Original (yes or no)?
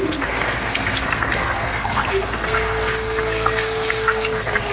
no